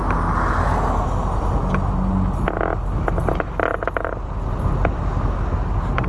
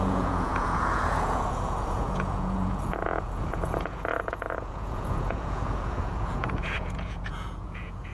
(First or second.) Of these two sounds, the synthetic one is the second